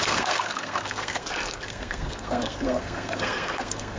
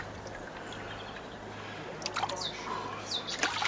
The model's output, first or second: first